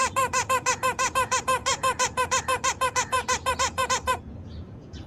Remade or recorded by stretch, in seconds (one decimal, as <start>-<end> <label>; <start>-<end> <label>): 0.0-5.1 remade